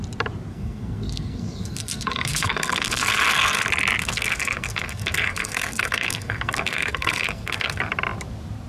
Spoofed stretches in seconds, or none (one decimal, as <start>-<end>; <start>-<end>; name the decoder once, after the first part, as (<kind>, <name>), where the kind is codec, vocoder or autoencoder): 0.5-3.6 (codec, SNAC); 4.0-7.8